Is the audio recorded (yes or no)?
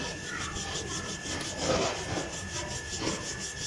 yes